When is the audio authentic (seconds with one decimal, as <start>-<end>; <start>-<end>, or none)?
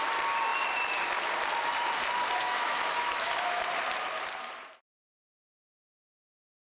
0.0-2.4; 3.6-6.7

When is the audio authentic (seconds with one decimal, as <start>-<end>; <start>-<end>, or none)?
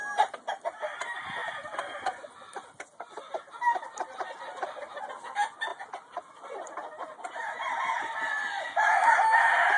0.0-1.4; 5.0-5.7; 7.8-9.8